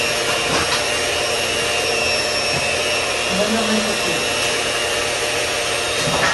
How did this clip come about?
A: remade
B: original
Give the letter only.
B